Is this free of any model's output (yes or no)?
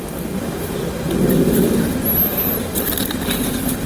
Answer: yes